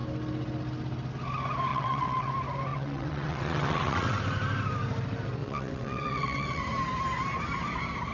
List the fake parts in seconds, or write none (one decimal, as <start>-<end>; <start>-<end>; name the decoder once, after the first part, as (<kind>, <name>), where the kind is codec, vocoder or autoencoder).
1.7-2.3 (vocoder, WaveNeXt); 2.7-4.2; 5.4-6.6